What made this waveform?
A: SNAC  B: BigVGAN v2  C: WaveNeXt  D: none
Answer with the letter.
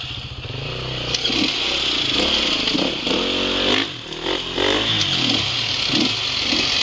D